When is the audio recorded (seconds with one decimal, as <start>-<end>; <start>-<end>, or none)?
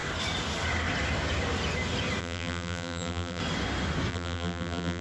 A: 0.0-2.2; 3.4-4.1